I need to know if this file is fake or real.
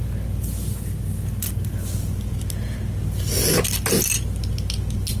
real